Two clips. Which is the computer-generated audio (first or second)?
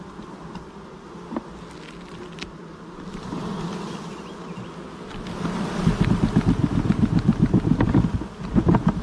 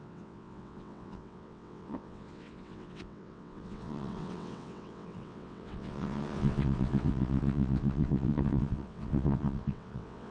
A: second